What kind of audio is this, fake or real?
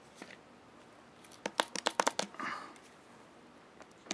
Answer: real